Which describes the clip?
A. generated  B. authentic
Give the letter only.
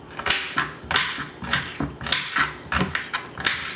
B